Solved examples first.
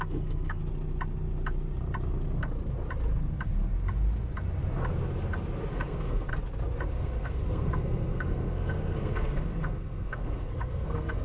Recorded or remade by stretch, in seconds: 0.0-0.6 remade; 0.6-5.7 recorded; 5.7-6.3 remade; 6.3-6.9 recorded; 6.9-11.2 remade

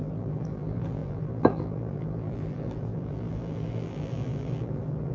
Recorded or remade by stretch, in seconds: 0.0-5.1 remade

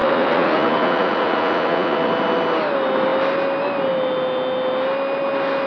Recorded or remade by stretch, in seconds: 0.0-2.1 remade; 2.1-5.7 recorded

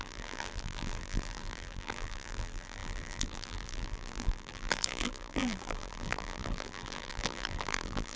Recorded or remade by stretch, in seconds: 0.0-8.2 remade